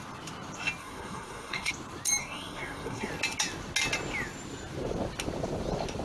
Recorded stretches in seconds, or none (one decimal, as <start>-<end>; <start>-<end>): 0.0-0.8; 1.7-2.2; 3.1-6.0